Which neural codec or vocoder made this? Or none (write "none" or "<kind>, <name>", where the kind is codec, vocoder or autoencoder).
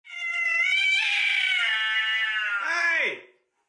none